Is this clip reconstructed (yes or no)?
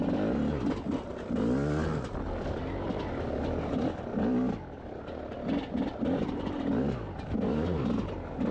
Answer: no